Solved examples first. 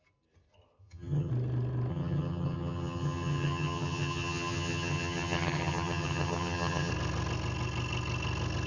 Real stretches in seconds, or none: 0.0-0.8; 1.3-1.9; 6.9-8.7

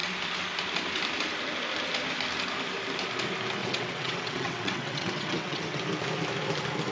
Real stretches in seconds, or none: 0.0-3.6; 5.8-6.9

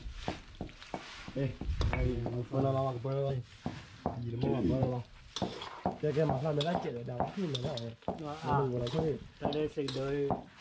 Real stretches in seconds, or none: 0.0-10.6